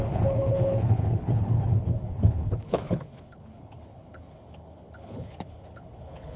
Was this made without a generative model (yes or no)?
no